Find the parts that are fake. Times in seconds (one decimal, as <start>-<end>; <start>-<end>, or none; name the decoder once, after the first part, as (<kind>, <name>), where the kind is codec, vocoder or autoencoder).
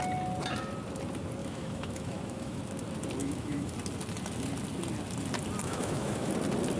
1.4-2.6 (autoencoder, DAC-VAE); 3.2-3.7; 5.6-6.3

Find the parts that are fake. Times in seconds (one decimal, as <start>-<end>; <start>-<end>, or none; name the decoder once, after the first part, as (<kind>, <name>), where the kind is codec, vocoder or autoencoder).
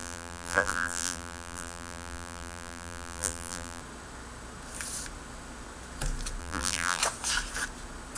0.0-3.8 (vocoder, BigVGAN v2); 6.4-7.0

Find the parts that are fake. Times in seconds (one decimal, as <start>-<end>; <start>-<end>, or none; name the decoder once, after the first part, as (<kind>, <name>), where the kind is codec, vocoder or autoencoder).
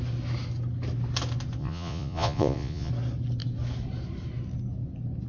1.6-2.9 (vocoder, Vocos)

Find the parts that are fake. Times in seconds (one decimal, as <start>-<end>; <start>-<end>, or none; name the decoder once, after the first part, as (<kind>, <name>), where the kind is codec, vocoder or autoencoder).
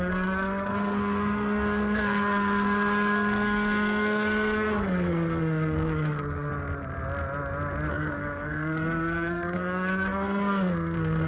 0.0-6.5 (codec, SNAC); 7.9-11.3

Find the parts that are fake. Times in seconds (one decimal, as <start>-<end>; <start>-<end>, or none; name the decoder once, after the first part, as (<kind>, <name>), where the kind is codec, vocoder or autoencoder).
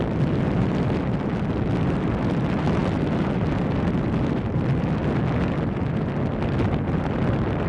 none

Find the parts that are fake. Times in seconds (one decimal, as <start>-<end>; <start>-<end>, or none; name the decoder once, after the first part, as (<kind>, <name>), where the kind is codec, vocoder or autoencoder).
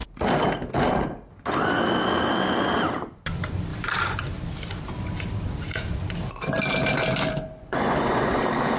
7.6-8.4 (vocoder, Vocos)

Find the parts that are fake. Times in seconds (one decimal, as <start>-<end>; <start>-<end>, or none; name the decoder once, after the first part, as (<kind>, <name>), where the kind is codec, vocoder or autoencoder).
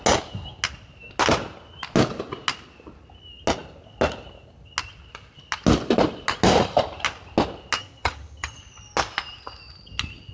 7.8-8.6 (vocoder, HiFi-GAN)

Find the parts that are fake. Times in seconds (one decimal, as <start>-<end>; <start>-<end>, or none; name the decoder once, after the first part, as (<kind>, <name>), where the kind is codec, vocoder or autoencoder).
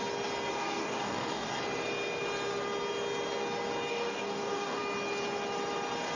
0.5-1.6 (codec, DAC); 3.9-4.8